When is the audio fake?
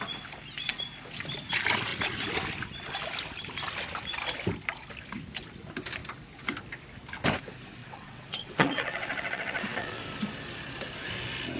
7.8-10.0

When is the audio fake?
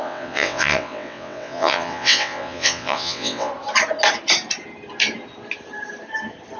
0.0-3.5